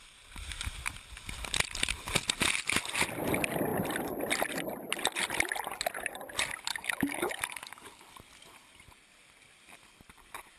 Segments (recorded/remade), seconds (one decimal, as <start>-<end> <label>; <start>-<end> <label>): 0.0-6.7 recorded; 6.7-8.0 remade; 8.0-10.6 recorded